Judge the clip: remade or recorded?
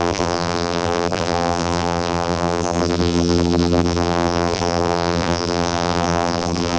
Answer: remade